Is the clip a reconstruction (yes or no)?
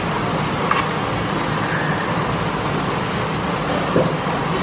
no